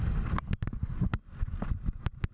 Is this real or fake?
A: real